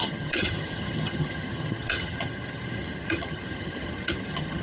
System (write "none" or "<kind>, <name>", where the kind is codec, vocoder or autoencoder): vocoder, HiFi-GAN